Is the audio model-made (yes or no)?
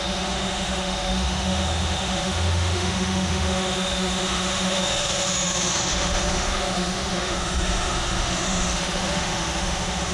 yes